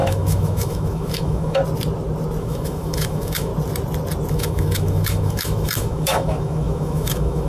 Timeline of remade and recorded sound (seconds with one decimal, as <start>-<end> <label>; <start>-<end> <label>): 0.0-1.6 remade; 1.6-2.4 recorded; 2.4-3.5 remade; 3.5-4.3 recorded; 4.3-7.5 remade

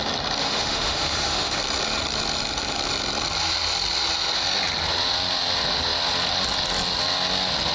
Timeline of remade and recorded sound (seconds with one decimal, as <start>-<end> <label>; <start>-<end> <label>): 0.0-0.4 recorded; 0.4-1.6 remade; 1.6-7.7 recorded

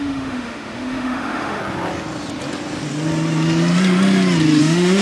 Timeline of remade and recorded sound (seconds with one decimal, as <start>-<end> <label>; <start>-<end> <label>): 0.0-1.6 remade; 1.6-4.6 recorded; 4.6-5.0 remade

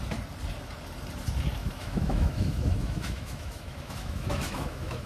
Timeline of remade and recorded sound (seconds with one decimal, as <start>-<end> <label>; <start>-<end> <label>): 0.0-1.6 recorded; 1.6-5.1 remade

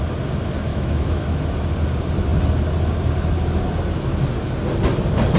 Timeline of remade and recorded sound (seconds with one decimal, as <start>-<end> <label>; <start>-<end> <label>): 0.0-0.7 recorded; 0.7-1.4 remade; 1.4-5.4 recorded